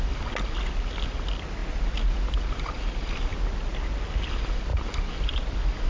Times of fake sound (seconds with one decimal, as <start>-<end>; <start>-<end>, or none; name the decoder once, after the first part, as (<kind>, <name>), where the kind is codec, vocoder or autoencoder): none